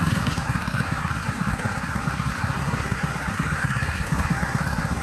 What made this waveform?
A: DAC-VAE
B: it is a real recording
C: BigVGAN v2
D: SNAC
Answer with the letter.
D